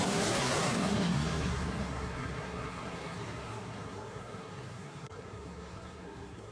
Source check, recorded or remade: remade